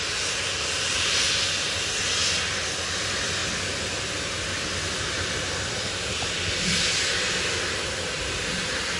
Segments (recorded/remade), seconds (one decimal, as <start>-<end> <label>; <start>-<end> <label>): 0.0-9.0 recorded